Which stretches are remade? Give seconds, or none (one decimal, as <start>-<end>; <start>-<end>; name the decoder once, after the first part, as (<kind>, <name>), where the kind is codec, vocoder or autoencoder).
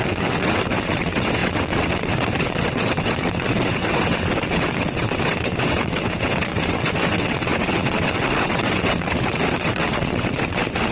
0.0-10.9 (vocoder, WaveNeXt)